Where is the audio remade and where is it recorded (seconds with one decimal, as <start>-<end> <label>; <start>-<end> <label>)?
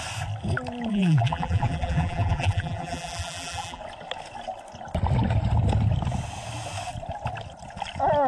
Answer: 0.0-0.9 recorded; 0.9-3.8 remade; 3.8-8.3 recorded